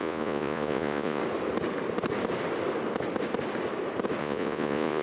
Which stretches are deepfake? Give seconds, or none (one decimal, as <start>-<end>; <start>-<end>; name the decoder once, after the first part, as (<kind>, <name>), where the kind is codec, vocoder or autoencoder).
0.0-1.2 (vocoder, Vocos); 4.2-5.0